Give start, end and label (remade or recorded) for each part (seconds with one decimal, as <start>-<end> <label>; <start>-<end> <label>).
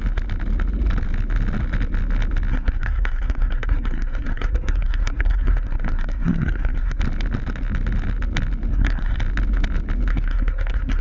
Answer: 0.0-2.5 recorded; 2.5-7.0 remade; 7.0-8.7 recorded; 8.7-9.2 remade; 9.2-10.1 recorded; 10.1-11.0 remade